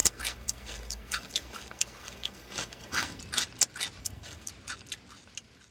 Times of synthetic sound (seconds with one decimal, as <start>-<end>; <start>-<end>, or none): 0.0-3.2; 4.0-4.5